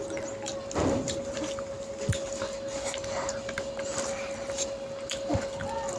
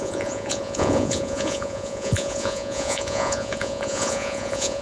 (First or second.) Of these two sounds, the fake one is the second